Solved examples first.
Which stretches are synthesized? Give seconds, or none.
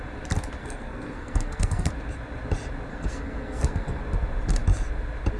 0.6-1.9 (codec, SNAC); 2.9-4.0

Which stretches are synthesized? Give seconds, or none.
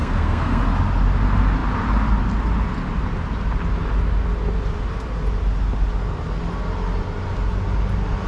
0.0-0.6 (codec, SNAC)